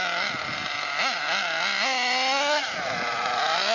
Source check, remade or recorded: recorded